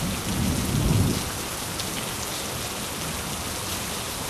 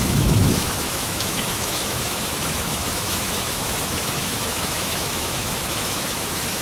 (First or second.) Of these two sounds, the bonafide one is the first